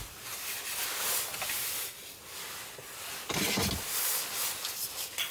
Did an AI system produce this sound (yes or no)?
no